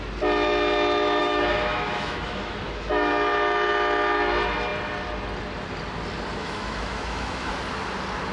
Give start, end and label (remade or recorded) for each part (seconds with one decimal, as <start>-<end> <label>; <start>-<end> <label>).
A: 0.0-1.2 recorded; 1.2-3.1 remade; 3.1-6.4 recorded; 6.4-7.5 remade; 7.5-8.3 recorded